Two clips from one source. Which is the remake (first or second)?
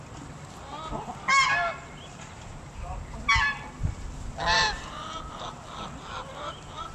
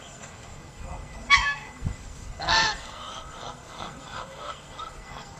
second